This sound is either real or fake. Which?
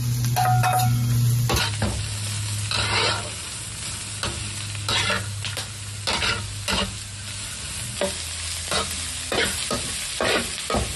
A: real